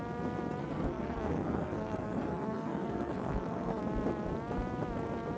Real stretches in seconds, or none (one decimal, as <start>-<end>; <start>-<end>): 0.0-0.6; 3.8-5.4